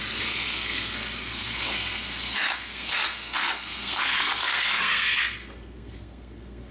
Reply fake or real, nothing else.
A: fake